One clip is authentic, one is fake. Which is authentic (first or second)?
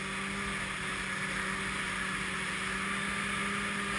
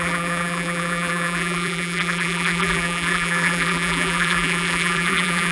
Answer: first